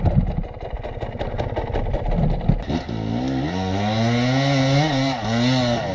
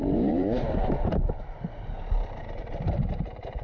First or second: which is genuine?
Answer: first